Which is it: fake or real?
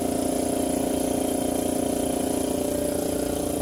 real